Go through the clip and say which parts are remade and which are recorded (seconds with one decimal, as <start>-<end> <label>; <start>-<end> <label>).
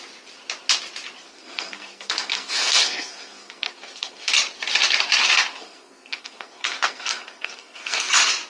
0.0-1.3 recorded; 1.3-4.3 remade; 4.3-5.5 recorded; 5.5-8.1 remade; 8.1-8.5 recorded